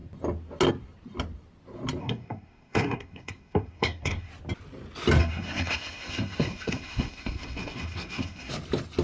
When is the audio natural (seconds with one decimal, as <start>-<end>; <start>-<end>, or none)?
0.0-2.0; 4.3-5.2; 8.5-9.0